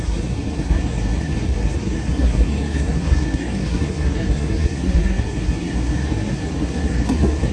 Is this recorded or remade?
remade